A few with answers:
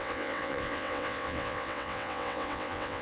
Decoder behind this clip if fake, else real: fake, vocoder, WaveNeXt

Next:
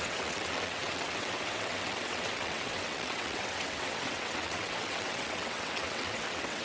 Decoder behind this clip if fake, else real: fake, vocoder, WaveNeXt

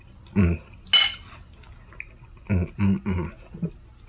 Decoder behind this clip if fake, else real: real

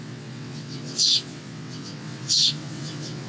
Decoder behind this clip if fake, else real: fake, vocoder, WaveNeXt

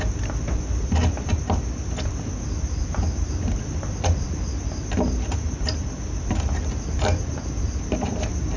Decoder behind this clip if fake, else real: real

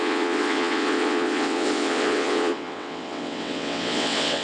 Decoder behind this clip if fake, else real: fake, vocoder, WaveNeXt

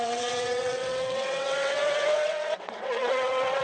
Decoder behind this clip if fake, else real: fake, vocoder, WaveNeXt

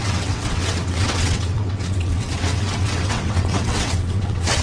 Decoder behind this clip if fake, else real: fake, vocoder, WaveNeXt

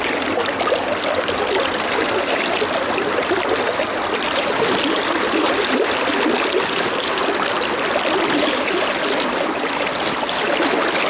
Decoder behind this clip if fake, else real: real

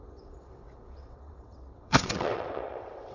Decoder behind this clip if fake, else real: fake, vocoder, WaveNeXt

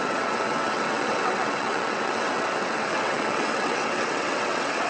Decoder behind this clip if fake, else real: fake, vocoder, WaveNeXt